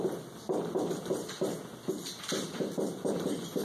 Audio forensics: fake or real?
real